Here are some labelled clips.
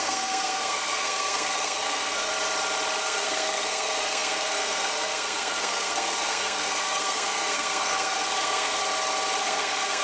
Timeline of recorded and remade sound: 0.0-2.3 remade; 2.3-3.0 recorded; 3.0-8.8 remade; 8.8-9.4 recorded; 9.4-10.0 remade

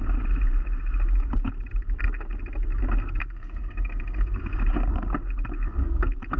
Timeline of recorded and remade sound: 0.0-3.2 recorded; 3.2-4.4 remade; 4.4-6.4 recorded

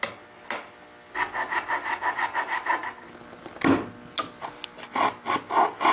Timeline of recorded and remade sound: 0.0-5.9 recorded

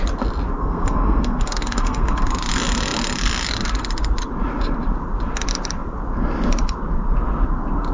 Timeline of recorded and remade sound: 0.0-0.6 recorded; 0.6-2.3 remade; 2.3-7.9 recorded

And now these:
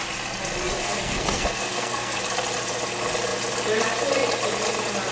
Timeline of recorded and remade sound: 0.0-0.8 recorded; 0.8-2.2 remade; 2.2-5.1 recorded

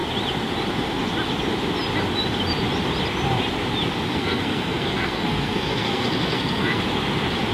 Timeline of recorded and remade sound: 0.0-4.1 recorded; 4.1-6.8 remade; 6.8-7.5 recorded

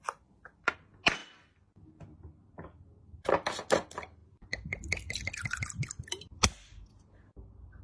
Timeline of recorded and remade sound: 0.0-7.8 recorded

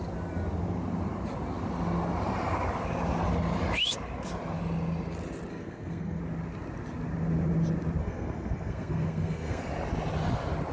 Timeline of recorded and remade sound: 0.0-5.5 recorded; 5.5-6.2 remade; 6.2-8.0 recorded; 8.0-9.6 remade; 9.6-10.7 recorded